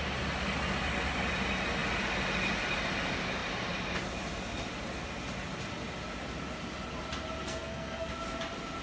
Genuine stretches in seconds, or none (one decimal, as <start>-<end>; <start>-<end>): 0.0-7.4; 8.1-8.8

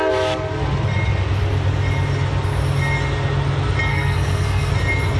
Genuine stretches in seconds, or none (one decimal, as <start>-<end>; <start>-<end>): 0.0-3.9; 4.7-5.2

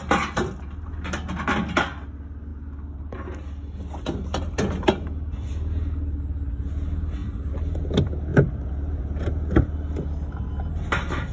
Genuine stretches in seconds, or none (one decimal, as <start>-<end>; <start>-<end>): 0.0-2.5; 3.1-11.3

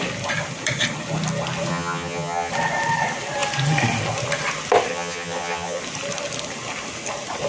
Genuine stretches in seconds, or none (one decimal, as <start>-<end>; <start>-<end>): 0.0-1.7; 2.5-4.9; 5.8-7.5

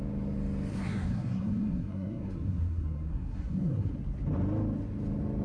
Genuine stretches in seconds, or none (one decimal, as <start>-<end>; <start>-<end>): 0.0-0.7; 3.9-5.4

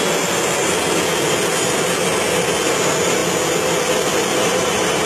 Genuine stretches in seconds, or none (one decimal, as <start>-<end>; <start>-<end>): 0.0-4.3

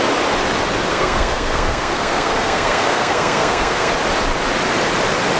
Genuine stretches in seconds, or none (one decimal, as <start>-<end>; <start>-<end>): 0.0-0.9; 3.9-5.4